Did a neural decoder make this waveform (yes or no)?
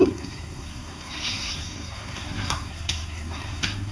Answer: yes